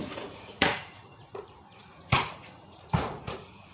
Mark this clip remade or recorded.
remade